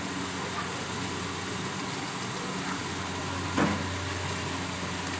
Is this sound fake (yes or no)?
no